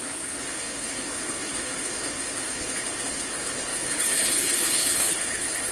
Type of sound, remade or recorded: remade